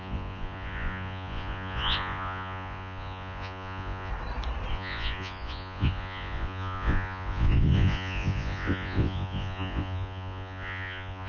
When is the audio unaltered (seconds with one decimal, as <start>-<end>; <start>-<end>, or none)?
4.1-4.7